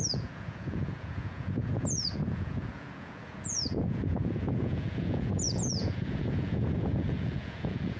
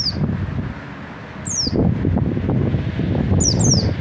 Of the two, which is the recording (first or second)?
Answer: second